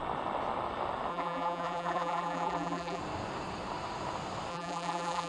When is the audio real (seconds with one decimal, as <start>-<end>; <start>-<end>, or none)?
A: 0.0-1.1; 3.0-4.5